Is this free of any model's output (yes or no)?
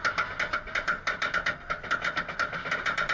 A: yes